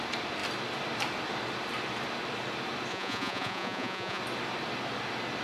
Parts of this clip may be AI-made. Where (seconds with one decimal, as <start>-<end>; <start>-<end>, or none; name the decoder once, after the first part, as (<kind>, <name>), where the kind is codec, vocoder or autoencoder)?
2.9-4.2 (vocoder, Vocos)